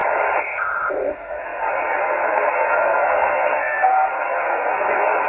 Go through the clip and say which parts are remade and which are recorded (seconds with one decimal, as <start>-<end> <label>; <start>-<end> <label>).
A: 0.0-0.9 recorded; 0.9-5.3 remade